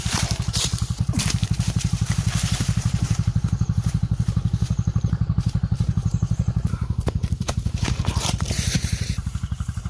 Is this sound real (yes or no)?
no